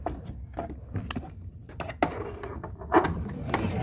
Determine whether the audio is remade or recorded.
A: recorded